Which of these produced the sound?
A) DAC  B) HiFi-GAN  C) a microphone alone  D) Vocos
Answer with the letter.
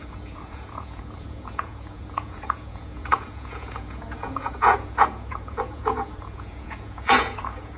D